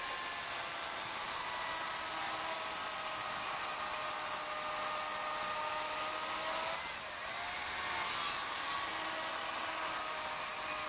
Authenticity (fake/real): real